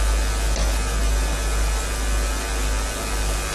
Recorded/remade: recorded